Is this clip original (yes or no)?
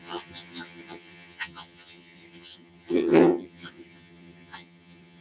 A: no